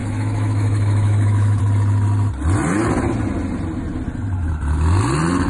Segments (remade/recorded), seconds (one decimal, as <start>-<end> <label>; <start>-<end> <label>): 0.0-1.6 remade; 1.6-5.5 recorded